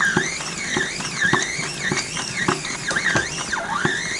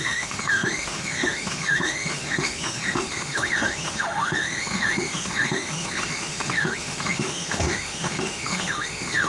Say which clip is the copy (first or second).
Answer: second